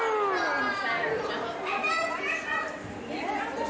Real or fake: real